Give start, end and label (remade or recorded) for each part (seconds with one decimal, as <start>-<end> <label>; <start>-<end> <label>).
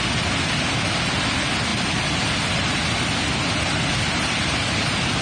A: 0.0-5.2 recorded